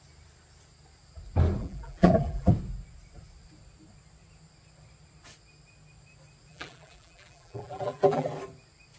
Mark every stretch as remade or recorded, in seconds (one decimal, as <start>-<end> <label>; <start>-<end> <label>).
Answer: 0.0-1.6 recorded; 1.6-2.5 remade; 2.5-6.5 recorded; 6.5-8.3 remade; 8.3-9.0 recorded